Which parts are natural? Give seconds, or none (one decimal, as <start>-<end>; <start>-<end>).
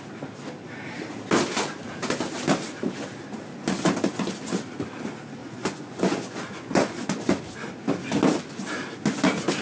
0.0-5.4; 7.4-9.6